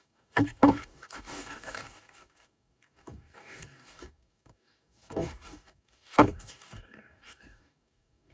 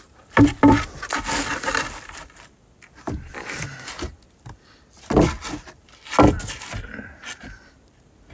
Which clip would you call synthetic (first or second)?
first